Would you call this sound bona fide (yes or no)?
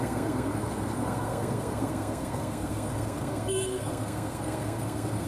no